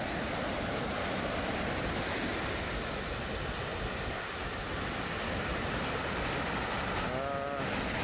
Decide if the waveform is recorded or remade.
recorded